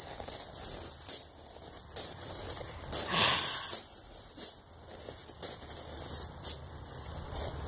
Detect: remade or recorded recorded